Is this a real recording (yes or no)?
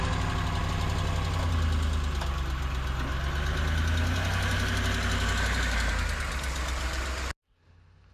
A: yes